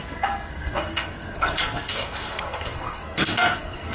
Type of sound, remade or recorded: remade